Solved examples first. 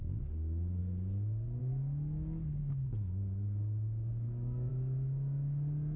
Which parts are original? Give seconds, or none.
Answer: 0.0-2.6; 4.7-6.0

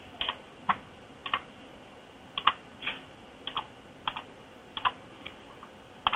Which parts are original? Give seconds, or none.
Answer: 0.0-6.2

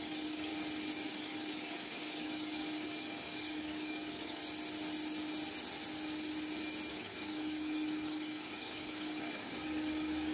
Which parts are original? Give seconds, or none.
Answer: 0.5-1.1; 4.4-6.9

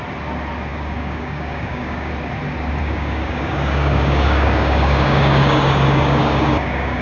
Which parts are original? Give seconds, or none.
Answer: 0.0-0.7; 2.1-2.8